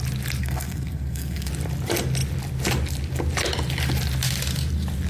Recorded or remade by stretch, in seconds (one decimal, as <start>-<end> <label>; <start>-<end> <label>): 0.0-0.4 recorded; 0.4-1.5 remade; 1.5-5.1 recorded